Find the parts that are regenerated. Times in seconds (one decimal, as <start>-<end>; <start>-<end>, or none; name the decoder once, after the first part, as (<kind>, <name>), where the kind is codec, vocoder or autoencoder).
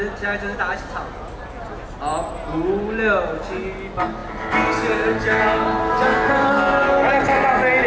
none